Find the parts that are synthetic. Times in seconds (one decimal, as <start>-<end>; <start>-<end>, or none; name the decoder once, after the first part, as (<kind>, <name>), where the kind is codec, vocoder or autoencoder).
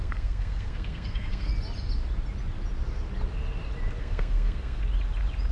0.0-1.5 (codec, SNAC); 4.0-4.8